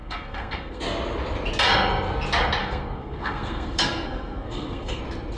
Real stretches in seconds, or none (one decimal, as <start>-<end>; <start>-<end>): 0.8-2.6; 5.0-5.4